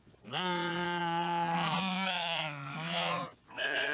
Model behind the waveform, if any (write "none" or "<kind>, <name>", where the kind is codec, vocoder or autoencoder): vocoder, Vocos